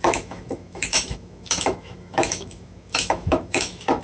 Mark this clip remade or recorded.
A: remade